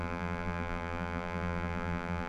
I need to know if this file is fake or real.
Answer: fake